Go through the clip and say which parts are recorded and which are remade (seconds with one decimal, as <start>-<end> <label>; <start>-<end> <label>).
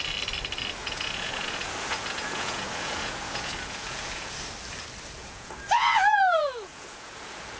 0.0-0.8 recorded; 0.8-4.3 remade; 4.3-5.2 recorded; 5.2-7.6 remade